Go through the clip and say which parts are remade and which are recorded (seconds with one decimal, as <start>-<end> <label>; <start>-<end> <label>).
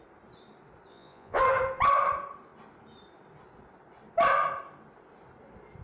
0.0-0.9 recorded; 0.9-1.4 remade; 1.4-5.8 recorded